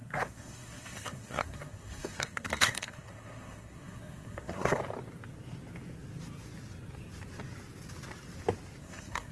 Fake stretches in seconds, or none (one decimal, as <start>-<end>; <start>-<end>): 0.0-4.8; 8.8-9.3